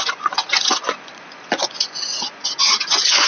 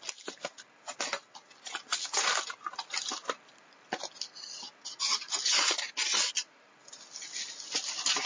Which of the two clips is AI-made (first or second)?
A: first